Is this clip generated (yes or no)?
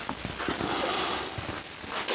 no